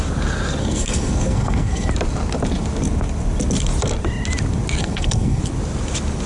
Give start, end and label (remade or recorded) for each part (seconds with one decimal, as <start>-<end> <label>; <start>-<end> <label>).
0.0-0.6 recorded; 0.6-1.9 remade; 1.9-4.8 recorded; 4.8-5.4 remade; 5.4-6.3 recorded